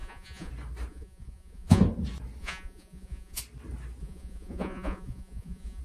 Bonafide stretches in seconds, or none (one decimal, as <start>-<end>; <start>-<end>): 0.5-0.9; 1.8-2.4; 3.4-4.0